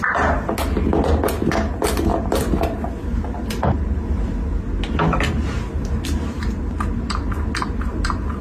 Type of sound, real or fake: real